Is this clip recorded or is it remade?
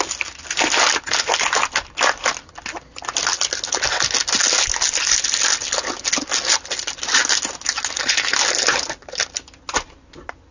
recorded